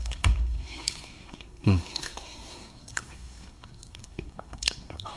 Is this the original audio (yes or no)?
no